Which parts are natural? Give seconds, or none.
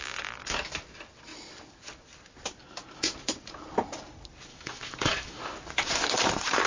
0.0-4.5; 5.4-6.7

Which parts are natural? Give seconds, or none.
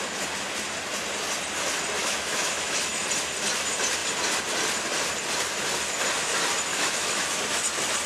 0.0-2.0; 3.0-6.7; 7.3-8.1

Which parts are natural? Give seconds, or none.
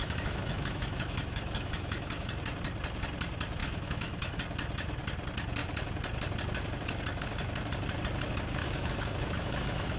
2.3-3.6; 4.4-8.6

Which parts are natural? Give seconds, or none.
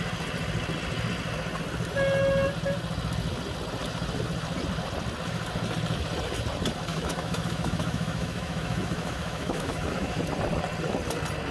0.0-6.9; 10.2-11.5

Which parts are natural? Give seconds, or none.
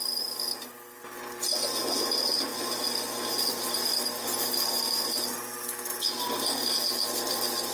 0.0-7.7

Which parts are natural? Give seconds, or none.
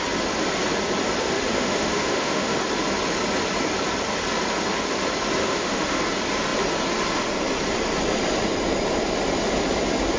0.0-1.2; 2.6-5.4; 6.0-10.2